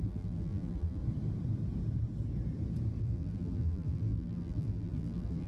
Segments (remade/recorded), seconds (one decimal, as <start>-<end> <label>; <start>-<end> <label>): 0.0-1.0 remade; 1.0-3.0 recorded; 3.0-5.5 remade